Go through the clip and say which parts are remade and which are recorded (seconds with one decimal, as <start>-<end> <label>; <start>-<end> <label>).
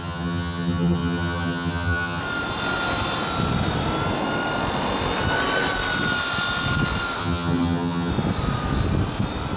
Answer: 0.0-2.2 remade; 2.2-7.2 recorded; 7.2-8.1 remade; 8.1-9.6 recorded